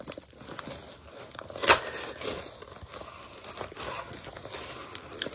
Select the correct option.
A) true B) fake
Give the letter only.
A